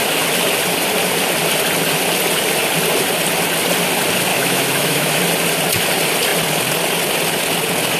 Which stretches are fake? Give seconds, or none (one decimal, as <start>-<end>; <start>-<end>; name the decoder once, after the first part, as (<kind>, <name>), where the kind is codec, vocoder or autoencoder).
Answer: 4.3-5.2 (autoencoder, DAC-VAE)